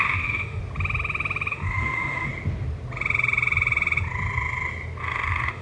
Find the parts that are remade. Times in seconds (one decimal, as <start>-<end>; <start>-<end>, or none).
0.0-0.6; 1.5-2.3; 5.0-5.6